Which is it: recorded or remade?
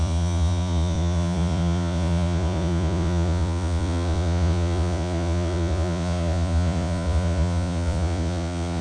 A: remade